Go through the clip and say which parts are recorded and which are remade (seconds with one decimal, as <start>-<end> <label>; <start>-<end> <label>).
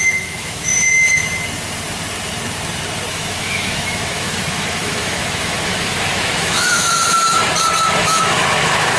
0.0-0.7 remade; 0.7-3.1 recorded; 3.1-7.4 remade; 7.4-8.0 recorded; 8.0-9.0 remade